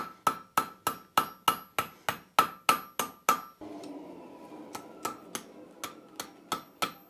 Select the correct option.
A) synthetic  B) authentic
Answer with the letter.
B